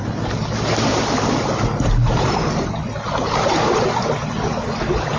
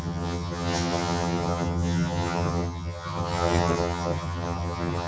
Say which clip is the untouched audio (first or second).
first